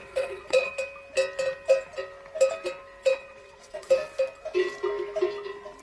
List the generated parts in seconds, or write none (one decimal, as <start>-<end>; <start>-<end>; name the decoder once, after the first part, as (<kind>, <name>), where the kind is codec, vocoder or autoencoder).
0.0-0.7 (vocoder, WaveNeXt); 3.1-3.9